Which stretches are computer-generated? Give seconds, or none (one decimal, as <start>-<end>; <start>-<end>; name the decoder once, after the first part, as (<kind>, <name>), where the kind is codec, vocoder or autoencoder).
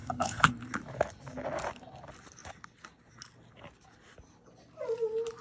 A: 0.0-0.5 (codec, HILCodec)